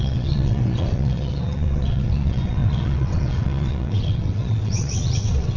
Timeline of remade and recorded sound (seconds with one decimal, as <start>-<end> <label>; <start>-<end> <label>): 0.0-5.6 remade